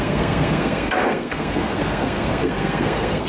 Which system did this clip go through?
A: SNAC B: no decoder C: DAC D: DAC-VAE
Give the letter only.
A